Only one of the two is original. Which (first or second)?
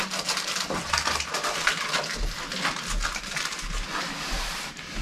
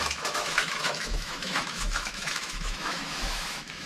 first